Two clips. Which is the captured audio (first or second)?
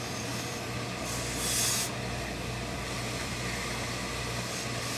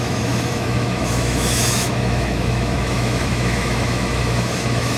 first